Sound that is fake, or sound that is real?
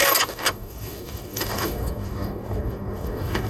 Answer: fake